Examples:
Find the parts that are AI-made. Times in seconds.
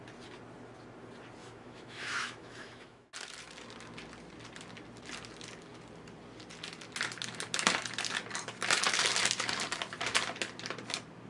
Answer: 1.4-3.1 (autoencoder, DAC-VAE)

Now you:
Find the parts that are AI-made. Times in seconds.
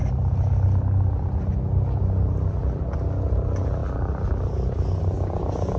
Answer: none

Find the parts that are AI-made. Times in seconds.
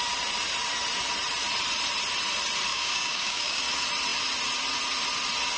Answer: 2.7-3.6 (codec, DAC)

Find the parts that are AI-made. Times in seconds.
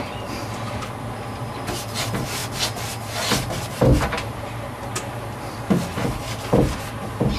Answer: none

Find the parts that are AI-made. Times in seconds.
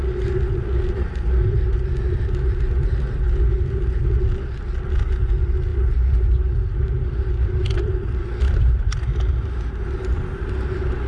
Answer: 5.7-11.1 (vocoder, BigVGAN v2)